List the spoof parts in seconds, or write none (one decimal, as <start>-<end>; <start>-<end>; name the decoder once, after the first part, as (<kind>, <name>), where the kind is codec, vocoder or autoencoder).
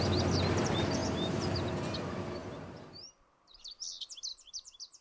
1.0-1.7 (vocoder, BigVGAN v2); 2.4-3.7; 4.3-5.0